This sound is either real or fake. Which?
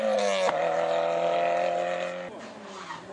real